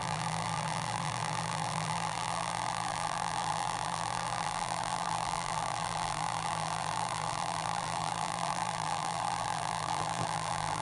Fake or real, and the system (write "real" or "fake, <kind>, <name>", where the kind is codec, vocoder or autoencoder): fake, vocoder, BigVGAN v2